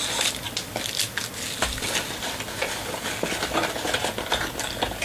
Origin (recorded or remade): recorded